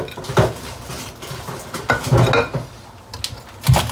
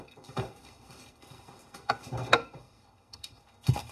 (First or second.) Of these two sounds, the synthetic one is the second